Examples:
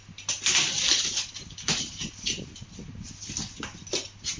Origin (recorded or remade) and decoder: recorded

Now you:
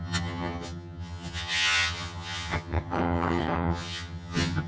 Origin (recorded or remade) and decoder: remade, vocoder, HiFi-GAN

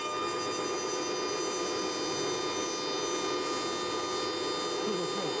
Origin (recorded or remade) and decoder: recorded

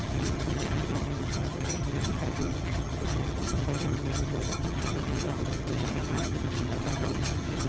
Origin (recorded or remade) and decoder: remade, vocoder, HiFi-GAN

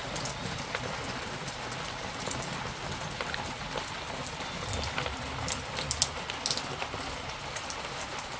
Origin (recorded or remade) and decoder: recorded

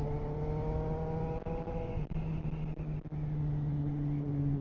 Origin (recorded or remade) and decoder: recorded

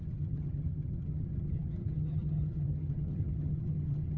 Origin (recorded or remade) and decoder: remade, vocoder, HiFi-GAN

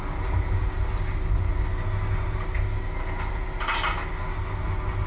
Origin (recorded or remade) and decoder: recorded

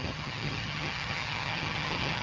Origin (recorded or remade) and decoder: remade, vocoder, HiFi-GAN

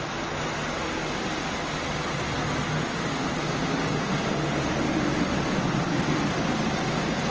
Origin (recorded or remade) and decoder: recorded